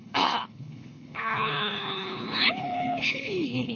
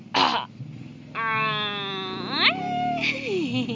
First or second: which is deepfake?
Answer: first